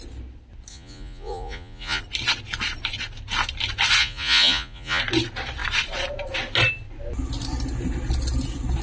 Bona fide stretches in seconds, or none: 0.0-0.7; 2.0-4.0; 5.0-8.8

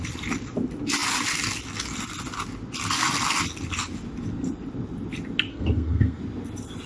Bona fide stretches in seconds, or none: 0.0-5.5; 6.2-6.9

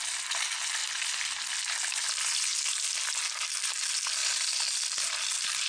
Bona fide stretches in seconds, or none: 0.0-5.7

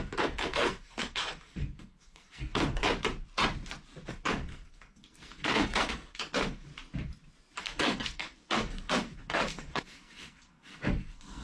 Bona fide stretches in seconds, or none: 2.8-4.1; 6.7-7.6

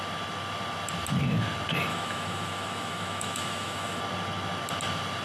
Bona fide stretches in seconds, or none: 0.0-1.9; 4.0-5.2

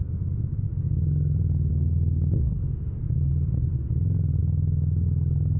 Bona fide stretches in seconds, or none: 0.0-1.7; 3.0-5.6

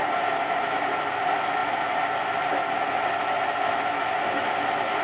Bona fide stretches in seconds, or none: 0.0-5.0

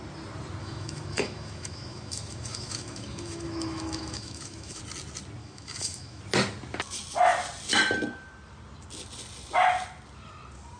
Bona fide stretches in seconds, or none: 0.0-0.6; 4.8-5.4; 6.2-10.8